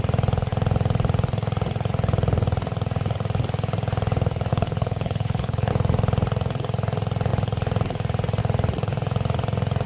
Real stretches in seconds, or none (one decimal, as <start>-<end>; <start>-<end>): 0.0-4.5; 5.7-9.9